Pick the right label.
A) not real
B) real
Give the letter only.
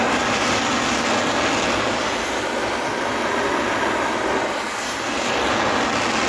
B